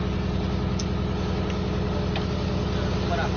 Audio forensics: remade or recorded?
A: recorded